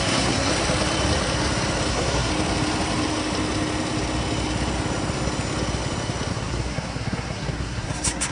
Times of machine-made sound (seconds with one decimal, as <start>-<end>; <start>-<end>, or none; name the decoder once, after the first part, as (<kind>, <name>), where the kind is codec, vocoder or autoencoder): 0.0-0.5 (codec, SNAC); 1.9-2.3; 6.3-8.3